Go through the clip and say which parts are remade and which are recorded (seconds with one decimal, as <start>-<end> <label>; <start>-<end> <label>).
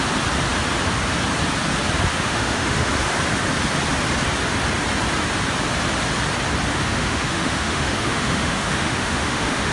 0.0-2.1 recorded; 2.1-2.9 remade; 2.9-6.7 recorded; 6.7-9.7 remade